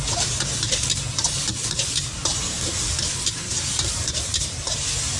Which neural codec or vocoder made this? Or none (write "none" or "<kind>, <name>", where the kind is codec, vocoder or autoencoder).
vocoder, BigVGAN v2